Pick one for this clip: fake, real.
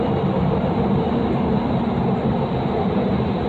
real